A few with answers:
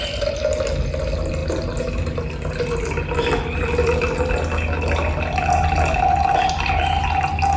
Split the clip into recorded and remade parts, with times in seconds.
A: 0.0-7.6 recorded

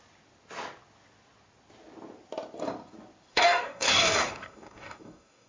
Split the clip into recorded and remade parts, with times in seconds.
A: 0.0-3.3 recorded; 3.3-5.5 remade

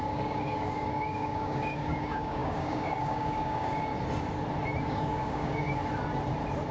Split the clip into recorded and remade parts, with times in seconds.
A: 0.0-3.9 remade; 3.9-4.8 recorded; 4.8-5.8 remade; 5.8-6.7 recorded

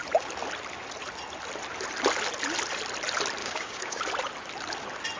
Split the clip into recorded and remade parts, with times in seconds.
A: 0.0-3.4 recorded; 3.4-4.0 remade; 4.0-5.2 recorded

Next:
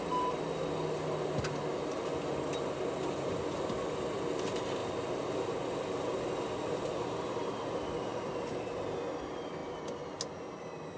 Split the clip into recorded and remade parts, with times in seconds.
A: 0.0-11.0 recorded

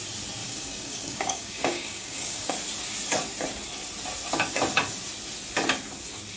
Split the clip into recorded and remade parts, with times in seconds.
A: 0.0-0.4 recorded; 0.4-2.5 remade; 2.5-6.4 recorded

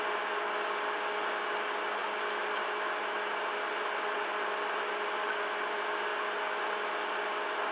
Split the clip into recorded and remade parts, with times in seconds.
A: 0.0-7.7 recorded